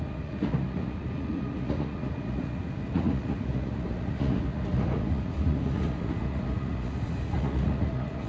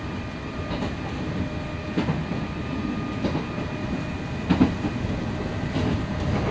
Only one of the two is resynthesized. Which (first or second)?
first